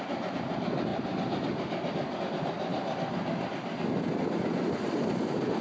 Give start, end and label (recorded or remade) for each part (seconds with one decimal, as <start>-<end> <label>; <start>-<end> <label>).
0.0-5.6 recorded

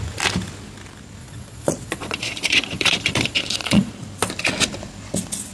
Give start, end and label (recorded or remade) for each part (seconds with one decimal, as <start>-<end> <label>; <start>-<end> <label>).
0.0-1.2 recorded; 1.2-3.9 remade; 3.9-5.5 recorded

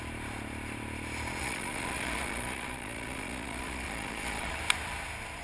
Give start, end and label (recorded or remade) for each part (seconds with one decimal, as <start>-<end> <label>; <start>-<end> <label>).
0.0-1.4 recorded; 1.4-4.6 remade; 4.6-5.4 recorded